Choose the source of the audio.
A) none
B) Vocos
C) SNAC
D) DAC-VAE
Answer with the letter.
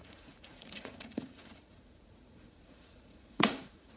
B